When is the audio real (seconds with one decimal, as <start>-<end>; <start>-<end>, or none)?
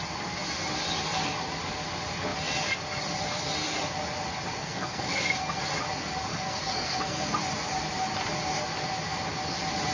0.0-4.6; 5.6-6.3; 7.4-9.9